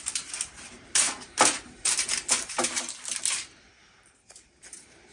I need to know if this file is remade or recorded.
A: remade